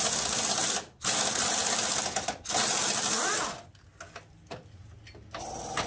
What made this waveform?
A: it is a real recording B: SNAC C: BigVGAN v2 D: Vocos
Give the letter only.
A